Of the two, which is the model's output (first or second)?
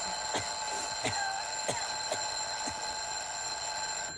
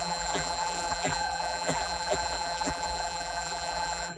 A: second